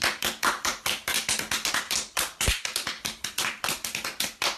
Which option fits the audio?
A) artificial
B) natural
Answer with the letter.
A